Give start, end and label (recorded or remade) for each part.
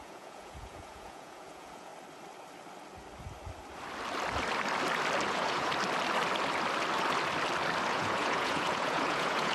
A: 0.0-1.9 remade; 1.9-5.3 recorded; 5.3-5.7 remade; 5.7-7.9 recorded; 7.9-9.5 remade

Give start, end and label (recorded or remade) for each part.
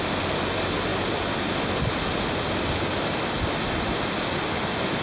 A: 0.0-5.0 recorded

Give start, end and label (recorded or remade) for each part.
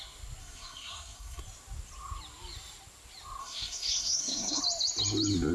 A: 0.0-0.4 recorded; 0.4-1.4 remade; 1.4-3.4 recorded; 3.4-4.6 remade; 4.6-5.5 recorded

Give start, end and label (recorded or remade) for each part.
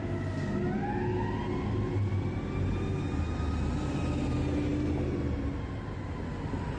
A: 0.0-6.8 recorded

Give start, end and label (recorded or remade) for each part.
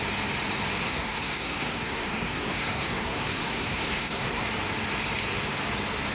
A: 0.0-0.8 recorded; 0.8-4.4 remade; 4.4-6.1 recorded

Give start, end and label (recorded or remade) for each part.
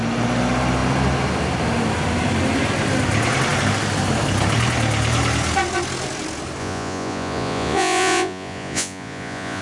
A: 0.0-6.6 recorded; 6.6-9.6 remade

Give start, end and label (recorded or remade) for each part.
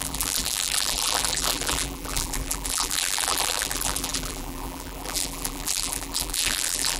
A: 0.0-7.0 remade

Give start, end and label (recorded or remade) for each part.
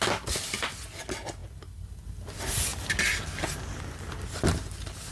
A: 0.0-5.1 recorded